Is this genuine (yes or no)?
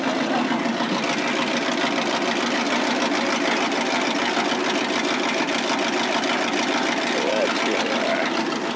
yes